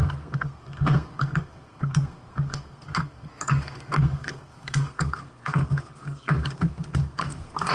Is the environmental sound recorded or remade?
remade